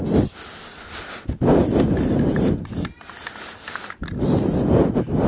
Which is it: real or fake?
real